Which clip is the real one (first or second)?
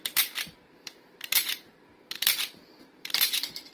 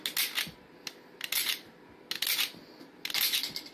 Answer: second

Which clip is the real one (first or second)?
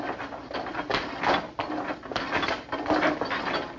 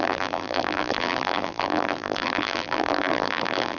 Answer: first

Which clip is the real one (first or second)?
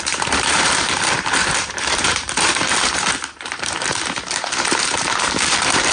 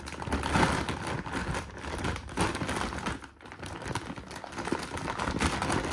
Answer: second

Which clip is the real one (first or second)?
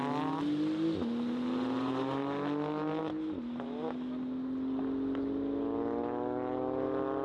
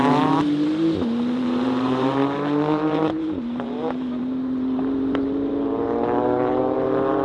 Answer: first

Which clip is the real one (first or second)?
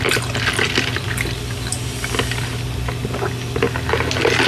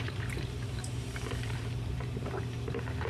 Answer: first